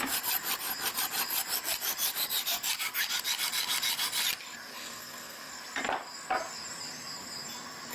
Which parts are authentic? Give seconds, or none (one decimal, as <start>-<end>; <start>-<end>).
0.0-4.7; 5.5-7.9